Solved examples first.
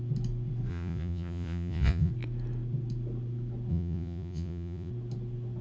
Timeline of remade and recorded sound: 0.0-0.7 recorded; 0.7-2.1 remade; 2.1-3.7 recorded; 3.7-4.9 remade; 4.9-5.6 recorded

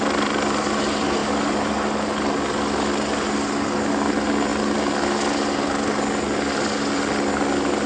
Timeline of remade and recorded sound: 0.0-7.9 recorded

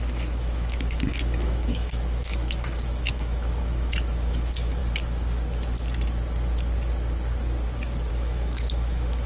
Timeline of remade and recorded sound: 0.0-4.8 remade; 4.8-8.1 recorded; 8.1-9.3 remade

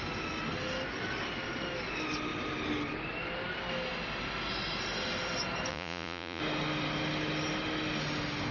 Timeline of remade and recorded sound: 0.0-5.7 recorded; 5.7-6.4 remade; 6.4-8.5 recorded

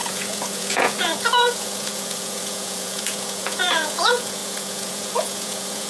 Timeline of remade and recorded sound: 0.0-5.9 remade

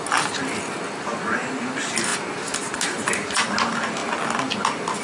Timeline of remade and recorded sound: 0.0-5.0 recorded

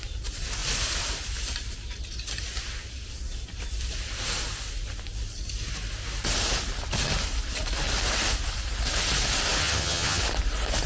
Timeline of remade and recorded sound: 0.0-9.6 recorded; 9.6-10.2 remade; 10.2-10.9 recorded

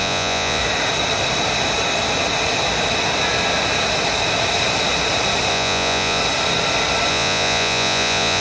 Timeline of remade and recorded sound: 0.0-0.6 remade; 0.6-5.5 recorded; 5.5-6.2 remade; 6.2-7.1 recorded; 7.1-8.4 remade